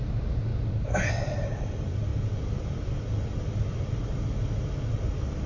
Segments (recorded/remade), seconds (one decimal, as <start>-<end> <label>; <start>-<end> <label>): 0.0-5.5 recorded

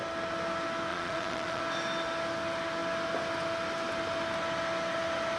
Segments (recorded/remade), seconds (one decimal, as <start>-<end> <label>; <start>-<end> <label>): 0.0-0.9 recorded; 0.9-1.6 remade; 1.6-5.4 recorded

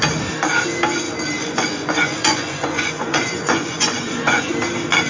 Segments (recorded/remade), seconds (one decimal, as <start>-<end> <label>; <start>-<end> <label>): 0.0-1.4 recorded; 1.4-4.5 remade; 4.5-5.1 recorded

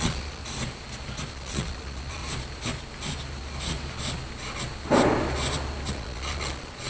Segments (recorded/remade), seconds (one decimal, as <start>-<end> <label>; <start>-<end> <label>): 0.0-0.4 remade; 0.4-1.3 recorded; 1.3-2.2 remade; 2.2-5.9 recorded; 5.9-6.9 remade

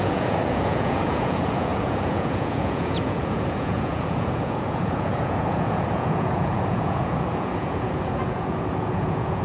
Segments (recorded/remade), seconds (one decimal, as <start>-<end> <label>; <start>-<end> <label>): 0.0-9.4 remade

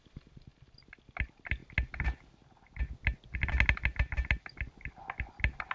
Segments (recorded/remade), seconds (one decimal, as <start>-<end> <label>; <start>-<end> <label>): 0.0-5.7 recorded